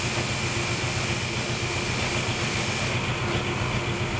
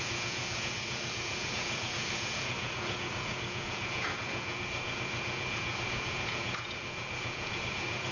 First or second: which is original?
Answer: first